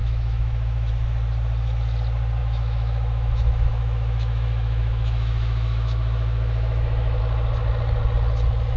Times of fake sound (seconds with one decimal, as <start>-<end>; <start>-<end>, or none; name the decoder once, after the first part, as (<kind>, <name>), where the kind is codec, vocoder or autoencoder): 0.0-0.9 (autoencoder, DAC-VAE); 2.4-7.2